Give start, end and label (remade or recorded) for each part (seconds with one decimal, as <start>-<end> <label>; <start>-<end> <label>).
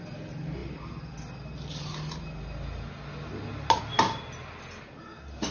0.0-5.5 recorded